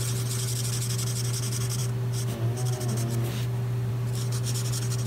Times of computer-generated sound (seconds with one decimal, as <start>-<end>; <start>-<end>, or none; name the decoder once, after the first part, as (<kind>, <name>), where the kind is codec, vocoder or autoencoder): none